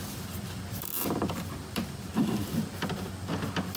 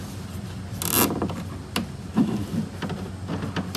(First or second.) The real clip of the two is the second